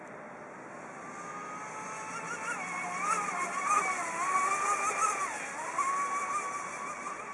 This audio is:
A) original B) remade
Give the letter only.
A